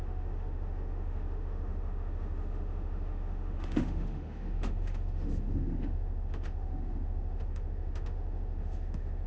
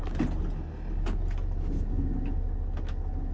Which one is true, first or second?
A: second